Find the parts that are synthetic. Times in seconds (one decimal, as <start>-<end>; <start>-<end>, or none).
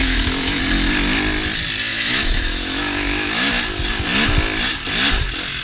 0.0-0.6; 1.9-3.5